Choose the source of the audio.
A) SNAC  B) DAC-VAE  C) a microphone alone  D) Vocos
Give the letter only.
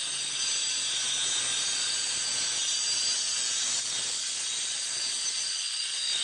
C